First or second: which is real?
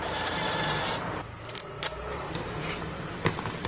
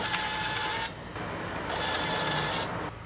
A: second